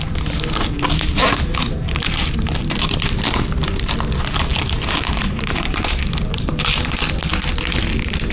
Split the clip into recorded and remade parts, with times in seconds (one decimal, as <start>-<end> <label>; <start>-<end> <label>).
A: 0.0-1.2 recorded; 1.2-2.2 remade; 2.2-4.5 recorded; 4.5-7.1 remade; 7.1-8.3 recorded